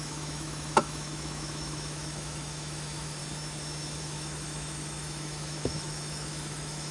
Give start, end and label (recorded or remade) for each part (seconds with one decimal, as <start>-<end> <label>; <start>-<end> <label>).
0.0-3.2 remade; 3.2-4.0 recorded; 4.0-6.9 remade